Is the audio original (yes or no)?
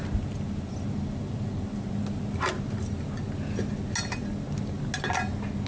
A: yes